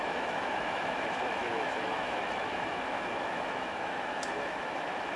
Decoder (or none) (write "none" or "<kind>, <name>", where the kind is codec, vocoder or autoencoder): autoencoder, DAC-VAE